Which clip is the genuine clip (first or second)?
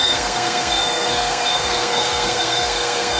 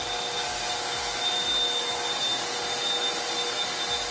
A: second